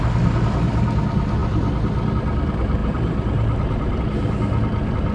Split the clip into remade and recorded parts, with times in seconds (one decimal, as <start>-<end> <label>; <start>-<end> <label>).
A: 0.0-2.8 recorded; 2.8-4.0 remade; 4.0-5.1 recorded